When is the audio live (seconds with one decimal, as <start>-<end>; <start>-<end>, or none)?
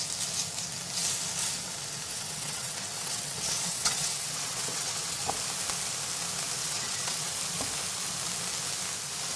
0.0-2.1; 5.3-6.6; 7.3-9.4